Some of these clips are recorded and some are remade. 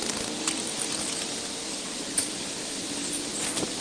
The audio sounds recorded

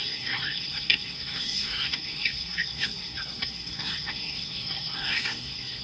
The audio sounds remade